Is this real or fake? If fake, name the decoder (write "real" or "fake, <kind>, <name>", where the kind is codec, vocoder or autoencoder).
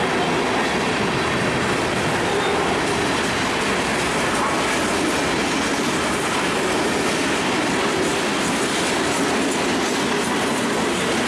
real